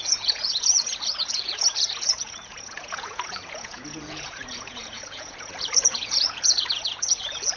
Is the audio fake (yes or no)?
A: yes